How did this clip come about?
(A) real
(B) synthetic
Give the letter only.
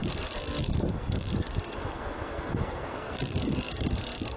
B